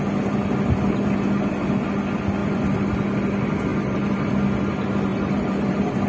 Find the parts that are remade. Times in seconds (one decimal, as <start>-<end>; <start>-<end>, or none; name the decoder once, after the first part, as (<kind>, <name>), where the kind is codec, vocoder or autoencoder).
2.4-2.9 (vocoder, BigVGAN v2); 3.7-4.3; 5.1-6.1